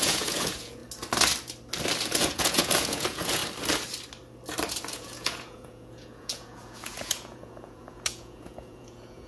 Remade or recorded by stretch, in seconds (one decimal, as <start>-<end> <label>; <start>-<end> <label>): 0.0-0.8 remade; 0.8-2.0 recorded; 2.0-3.4 remade; 3.4-4.9 recorded; 4.9-9.3 remade